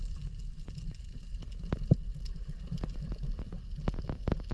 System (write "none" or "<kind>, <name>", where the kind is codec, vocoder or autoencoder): none